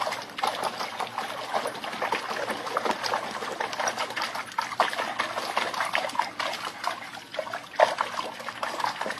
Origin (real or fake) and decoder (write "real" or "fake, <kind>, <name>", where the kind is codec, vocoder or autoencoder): real